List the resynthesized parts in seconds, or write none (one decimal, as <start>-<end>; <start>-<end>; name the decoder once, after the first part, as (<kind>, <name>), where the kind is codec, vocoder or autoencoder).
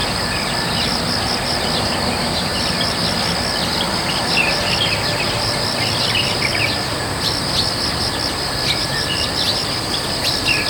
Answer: none